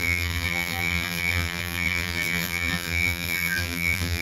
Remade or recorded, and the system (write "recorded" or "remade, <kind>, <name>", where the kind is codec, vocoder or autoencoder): remade, vocoder, BigVGAN v2